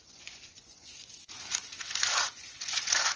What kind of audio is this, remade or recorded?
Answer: remade